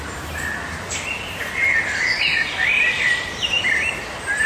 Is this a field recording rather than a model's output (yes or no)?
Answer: no